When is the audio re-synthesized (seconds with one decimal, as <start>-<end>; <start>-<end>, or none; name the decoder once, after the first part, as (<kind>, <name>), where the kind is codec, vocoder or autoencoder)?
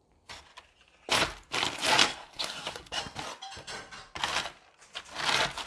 2.0-3.0 (codec, SNAC)